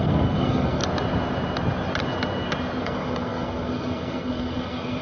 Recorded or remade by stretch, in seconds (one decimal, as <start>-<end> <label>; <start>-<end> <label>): 0.0-0.8 remade; 0.8-2.8 recorded; 2.8-5.0 remade